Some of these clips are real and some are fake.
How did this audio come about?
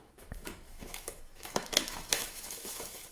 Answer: fake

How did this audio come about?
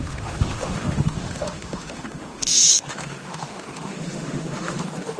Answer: fake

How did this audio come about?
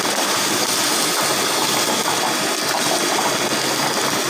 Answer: real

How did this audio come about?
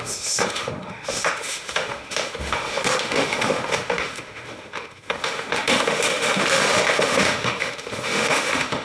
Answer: fake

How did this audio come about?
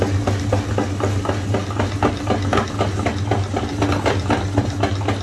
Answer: real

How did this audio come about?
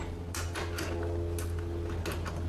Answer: real